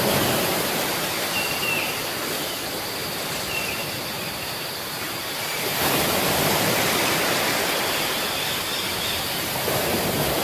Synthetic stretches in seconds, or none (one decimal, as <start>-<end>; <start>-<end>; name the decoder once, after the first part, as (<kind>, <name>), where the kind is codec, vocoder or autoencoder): 0.0-5.7 (vocoder, BigVGAN v2); 7.7-10.4